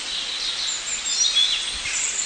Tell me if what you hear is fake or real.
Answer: real